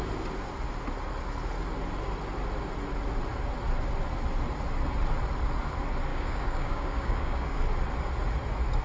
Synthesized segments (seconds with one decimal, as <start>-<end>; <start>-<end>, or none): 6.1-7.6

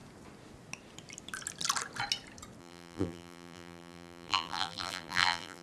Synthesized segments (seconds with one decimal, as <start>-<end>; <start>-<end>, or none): 2.6-5.6

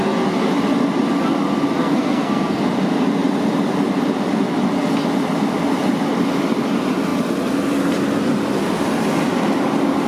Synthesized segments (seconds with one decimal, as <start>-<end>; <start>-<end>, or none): 1.8-2.6

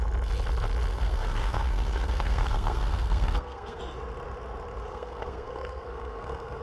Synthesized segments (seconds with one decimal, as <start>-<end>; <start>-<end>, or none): 0.9-3.8; 4.9-6.6